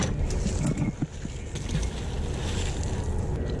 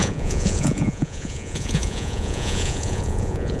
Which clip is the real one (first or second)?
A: first